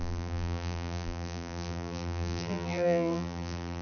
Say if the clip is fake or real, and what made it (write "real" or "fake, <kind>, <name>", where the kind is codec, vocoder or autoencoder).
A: fake, vocoder, BigVGAN v2